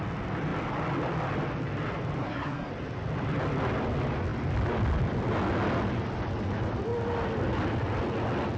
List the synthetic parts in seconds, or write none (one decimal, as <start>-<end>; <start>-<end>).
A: 2.2-2.7